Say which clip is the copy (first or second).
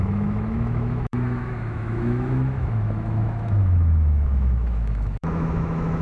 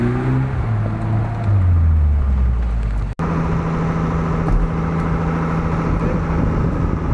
first